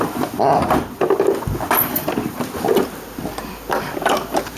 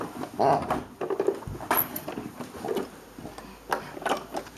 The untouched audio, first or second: second